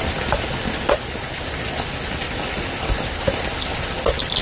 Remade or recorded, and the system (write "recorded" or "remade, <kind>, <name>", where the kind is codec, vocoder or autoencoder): recorded